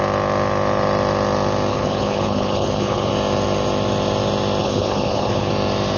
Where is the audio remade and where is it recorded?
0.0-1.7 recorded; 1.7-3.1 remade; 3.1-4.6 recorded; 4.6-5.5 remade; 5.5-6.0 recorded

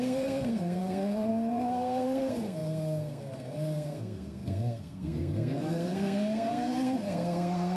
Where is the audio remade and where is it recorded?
0.0-7.8 remade